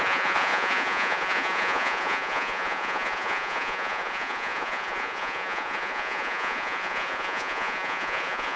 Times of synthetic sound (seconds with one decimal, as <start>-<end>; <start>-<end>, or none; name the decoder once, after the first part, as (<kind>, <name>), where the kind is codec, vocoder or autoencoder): 0.0-8.6 (vocoder, Vocos)